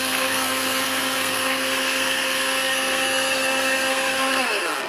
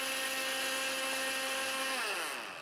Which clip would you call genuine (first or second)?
second